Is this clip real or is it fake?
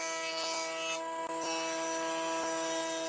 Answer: real